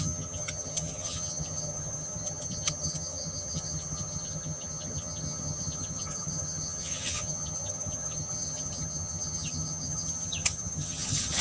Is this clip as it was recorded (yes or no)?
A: no